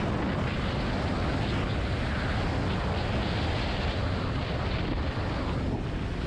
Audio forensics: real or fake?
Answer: real